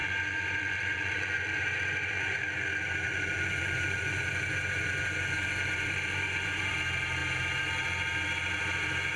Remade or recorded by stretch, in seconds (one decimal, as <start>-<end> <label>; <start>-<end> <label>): 0.0-2.4 remade; 2.4-3.1 recorded; 3.1-6.7 remade; 6.7-9.2 recorded